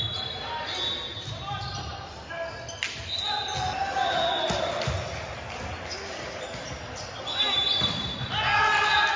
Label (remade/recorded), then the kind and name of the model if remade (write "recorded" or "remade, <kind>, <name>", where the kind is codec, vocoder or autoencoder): recorded